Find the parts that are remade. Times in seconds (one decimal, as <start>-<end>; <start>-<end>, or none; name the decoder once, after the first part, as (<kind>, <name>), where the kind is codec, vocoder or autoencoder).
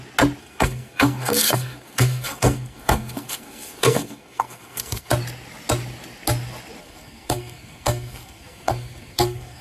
0.4-5.1 (codec, SNAC); 6.8-9.6